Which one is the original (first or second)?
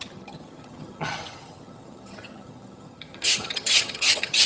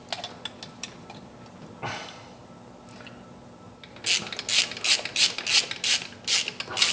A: second